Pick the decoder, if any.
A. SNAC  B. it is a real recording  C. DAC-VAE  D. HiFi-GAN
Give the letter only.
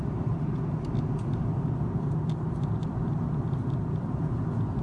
B